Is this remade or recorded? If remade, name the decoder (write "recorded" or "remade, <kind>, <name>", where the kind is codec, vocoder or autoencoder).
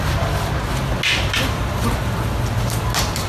recorded